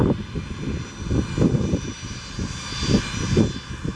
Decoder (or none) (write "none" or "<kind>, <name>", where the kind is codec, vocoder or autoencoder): none